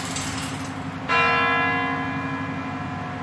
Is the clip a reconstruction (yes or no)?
no